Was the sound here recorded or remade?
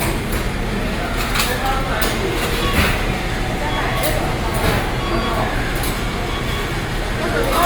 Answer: recorded